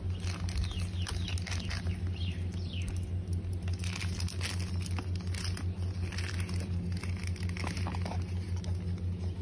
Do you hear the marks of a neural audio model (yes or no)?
no